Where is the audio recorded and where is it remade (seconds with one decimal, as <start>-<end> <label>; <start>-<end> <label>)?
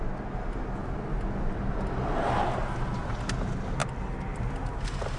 0.0-5.2 recorded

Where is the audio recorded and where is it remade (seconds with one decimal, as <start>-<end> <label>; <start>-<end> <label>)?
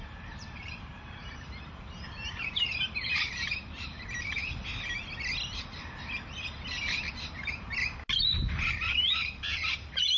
0.0-4.4 remade; 4.4-8.2 recorded; 8.2-10.2 remade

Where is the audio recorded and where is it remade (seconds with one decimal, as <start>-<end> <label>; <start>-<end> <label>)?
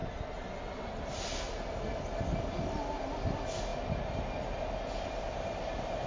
0.0-3.7 remade; 3.7-4.2 recorded; 4.2-6.1 remade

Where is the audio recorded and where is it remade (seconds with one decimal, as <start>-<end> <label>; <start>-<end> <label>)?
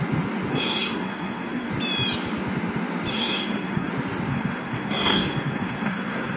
0.0-0.5 recorded; 0.5-1.7 remade; 1.7-3.1 recorded; 3.1-3.9 remade; 3.9-4.3 recorded; 4.3-6.4 remade